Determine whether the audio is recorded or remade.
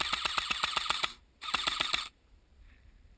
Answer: remade